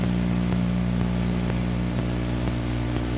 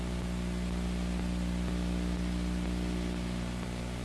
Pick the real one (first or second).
second